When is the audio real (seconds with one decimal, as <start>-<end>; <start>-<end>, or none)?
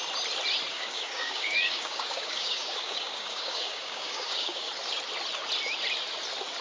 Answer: 0.0-0.7; 4.7-6.6